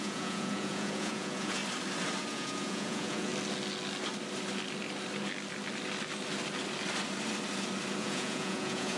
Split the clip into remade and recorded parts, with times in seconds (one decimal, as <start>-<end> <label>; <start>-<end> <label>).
0.0-1.6 remade; 1.6-2.3 recorded; 2.3-3.3 remade; 3.3-8.0 recorded; 8.0-9.0 remade